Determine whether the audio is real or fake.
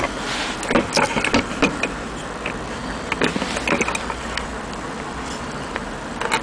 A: real